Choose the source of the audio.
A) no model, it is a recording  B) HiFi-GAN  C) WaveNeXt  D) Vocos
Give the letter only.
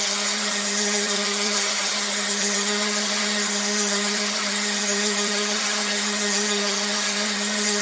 B